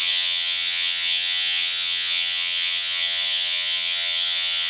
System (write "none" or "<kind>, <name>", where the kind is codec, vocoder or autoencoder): vocoder, HiFi-GAN